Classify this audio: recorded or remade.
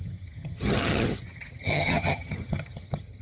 remade